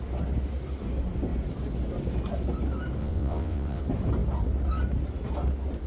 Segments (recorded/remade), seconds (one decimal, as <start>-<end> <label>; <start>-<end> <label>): 0.0-3.0 recorded; 3.0-3.8 remade; 3.8-5.9 recorded